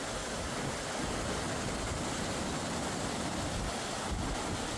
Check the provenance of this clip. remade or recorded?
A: recorded